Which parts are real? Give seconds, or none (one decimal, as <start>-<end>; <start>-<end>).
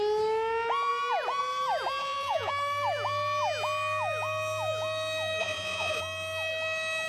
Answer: 0.0-2.0; 2.5-5.4; 6.0-7.1